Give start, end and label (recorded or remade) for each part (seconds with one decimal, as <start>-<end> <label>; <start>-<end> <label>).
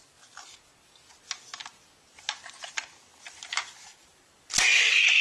0.0-5.2 recorded